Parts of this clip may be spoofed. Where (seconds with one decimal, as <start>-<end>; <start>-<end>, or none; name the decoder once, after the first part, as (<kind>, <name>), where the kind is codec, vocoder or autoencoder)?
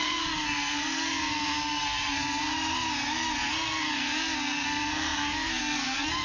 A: 0.0-2.4 (codec, SNAC); 3.4-6.2